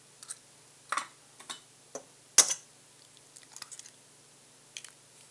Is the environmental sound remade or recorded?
recorded